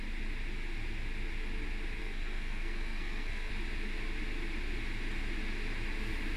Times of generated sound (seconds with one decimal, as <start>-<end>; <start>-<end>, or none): 2.0-3.5